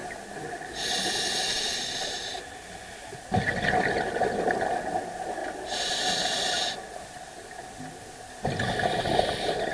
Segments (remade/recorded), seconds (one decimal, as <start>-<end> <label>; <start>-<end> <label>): 0.0-9.7 recorded